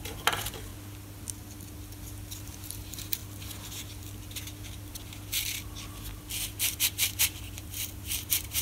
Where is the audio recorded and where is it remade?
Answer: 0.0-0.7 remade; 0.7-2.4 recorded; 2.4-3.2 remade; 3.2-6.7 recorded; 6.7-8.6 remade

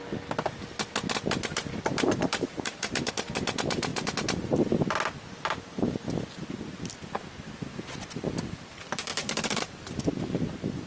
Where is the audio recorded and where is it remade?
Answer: 0.0-1.9 recorded; 1.9-3.1 remade; 3.1-9.1 recorded; 9.1-9.8 remade; 9.8-10.9 recorded

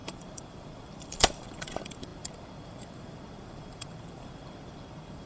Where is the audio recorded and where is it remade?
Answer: 0.0-5.3 remade

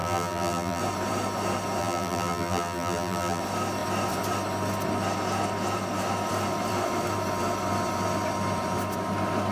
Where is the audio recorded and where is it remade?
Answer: 0.0-0.8 remade; 0.8-1.8 recorded; 1.8-3.4 remade; 3.4-9.5 recorded

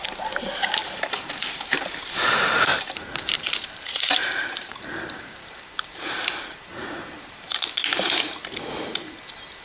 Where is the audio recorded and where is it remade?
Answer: 0.0-0.8 recorded; 0.8-2.0 remade; 2.0-2.7 recorded; 2.7-7.7 remade; 7.7-9.6 recorded

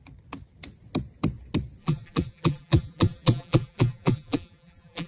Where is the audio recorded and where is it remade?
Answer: 0.0-1.8 recorded; 1.8-5.1 remade

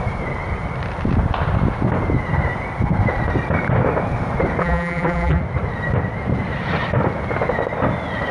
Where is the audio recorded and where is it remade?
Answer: 0.0-4.6 recorded; 4.6-5.4 remade; 5.4-8.3 recorded

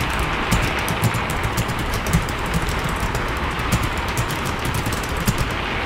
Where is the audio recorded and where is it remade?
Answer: 0.0-1.8 recorded; 1.8-5.3 remade; 5.3-5.9 recorded